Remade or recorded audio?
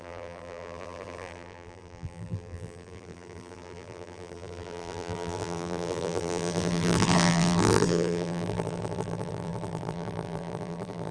remade